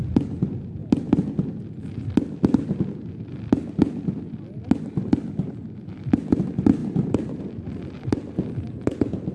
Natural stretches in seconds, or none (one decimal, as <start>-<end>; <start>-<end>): 0.0-9.3